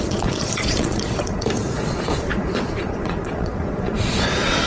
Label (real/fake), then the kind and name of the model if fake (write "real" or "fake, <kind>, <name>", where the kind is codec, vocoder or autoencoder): fake, vocoder, Vocos